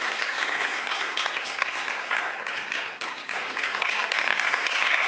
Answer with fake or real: fake